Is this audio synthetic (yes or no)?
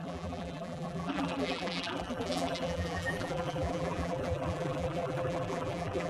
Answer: yes